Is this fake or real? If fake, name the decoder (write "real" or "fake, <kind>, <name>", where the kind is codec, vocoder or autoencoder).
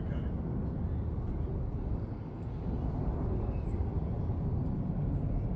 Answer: real